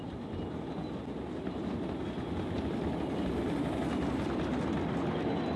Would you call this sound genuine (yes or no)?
yes